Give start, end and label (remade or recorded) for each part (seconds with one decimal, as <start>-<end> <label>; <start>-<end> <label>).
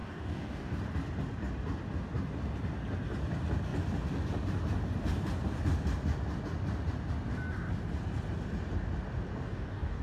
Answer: 0.0-0.7 remade; 0.7-9.3 recorded; 9.3-10.0 remade